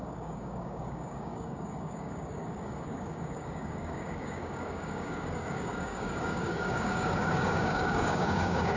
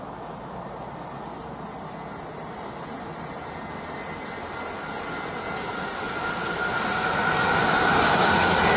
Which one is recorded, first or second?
second